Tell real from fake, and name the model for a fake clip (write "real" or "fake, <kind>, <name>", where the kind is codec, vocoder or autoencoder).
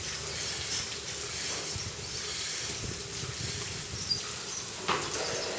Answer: real